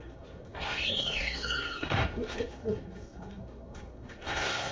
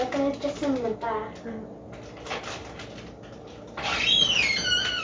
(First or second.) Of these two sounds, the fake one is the first